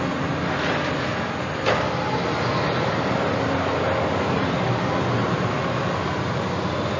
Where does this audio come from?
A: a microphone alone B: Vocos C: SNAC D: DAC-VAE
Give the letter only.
A